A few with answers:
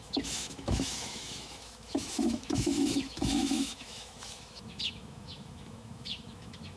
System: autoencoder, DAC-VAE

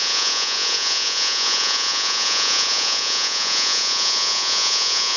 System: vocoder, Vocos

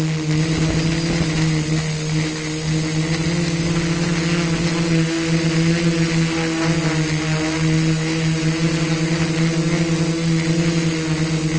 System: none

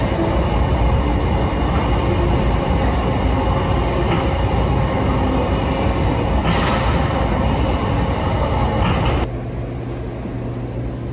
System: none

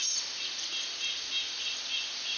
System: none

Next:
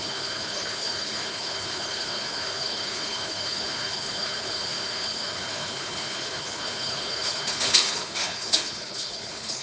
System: codec, HILCodec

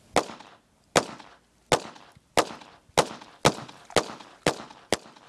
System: none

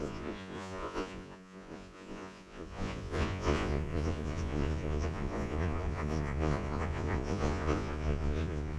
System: vocoder, Vocos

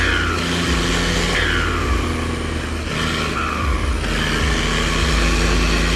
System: none